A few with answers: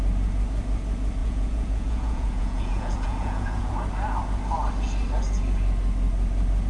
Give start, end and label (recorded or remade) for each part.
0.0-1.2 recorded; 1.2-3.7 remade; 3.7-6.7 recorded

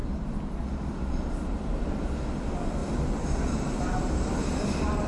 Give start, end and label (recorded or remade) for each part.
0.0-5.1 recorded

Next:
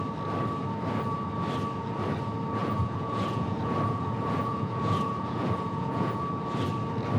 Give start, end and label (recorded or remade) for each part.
0.0-2.6 recorded; 2.6-6.2 remade; 6.2-7.2 recorded

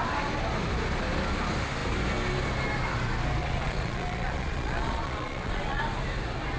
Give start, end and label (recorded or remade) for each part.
0.0-3.4 recorded; 3.4-5.8 remade; 5.8-6.6 recorded

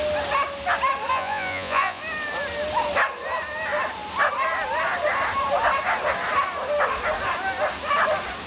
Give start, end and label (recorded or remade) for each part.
0.0-1.1 recorded; 1.1-2.0 remade; 2.0-8.5 recorded